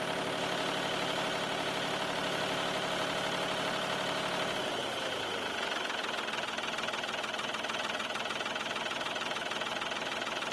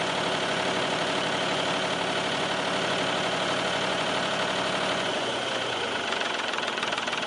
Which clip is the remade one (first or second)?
second